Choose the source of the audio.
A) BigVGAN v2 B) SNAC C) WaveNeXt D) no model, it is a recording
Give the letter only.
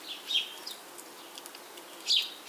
D